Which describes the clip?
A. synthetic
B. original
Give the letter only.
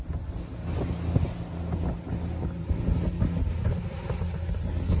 B